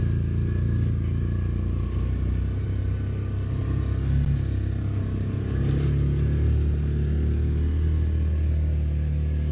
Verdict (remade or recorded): recorded